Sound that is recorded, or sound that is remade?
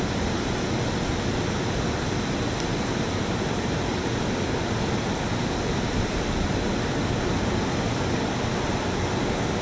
recorded